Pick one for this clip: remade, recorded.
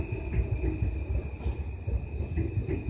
recorded